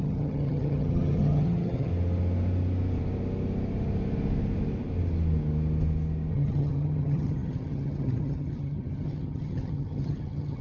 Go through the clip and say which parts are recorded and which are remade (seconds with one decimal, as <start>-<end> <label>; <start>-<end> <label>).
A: 0.0-1.9 remade; 1.9-6.3 recorded; 6.3-10.6 remade